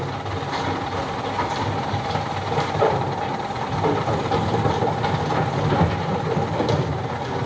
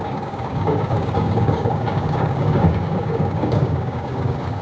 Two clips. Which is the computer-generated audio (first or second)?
second